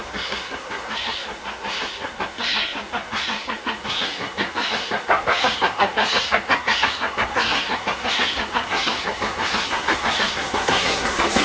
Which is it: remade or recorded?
remade